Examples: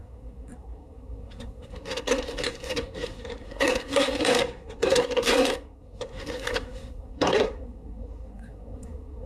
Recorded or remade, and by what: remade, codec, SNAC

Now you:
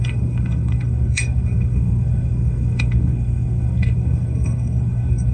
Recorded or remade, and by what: remade, codec, SNAC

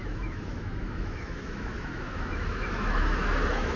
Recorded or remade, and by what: remade, autoencoder, DAC-VAE